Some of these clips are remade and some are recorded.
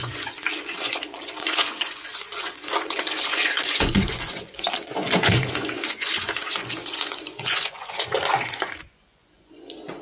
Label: remade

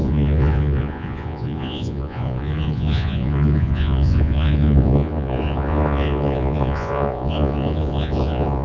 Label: remade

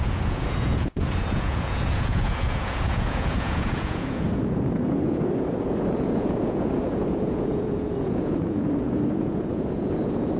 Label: remade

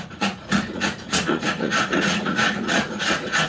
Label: remade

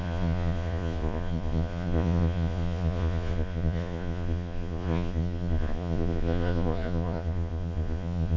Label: remade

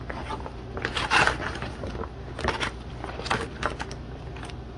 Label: recorded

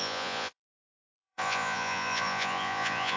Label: remade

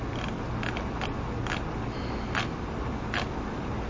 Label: recorded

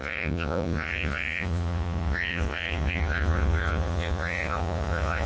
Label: remade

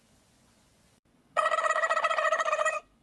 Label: remade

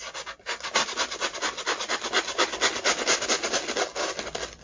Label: recorded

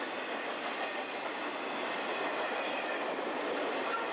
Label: recorded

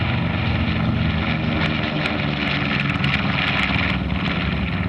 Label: recorded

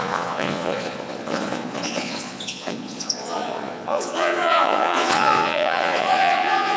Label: remade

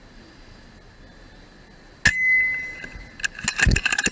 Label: recorded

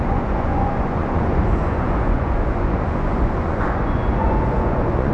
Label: remade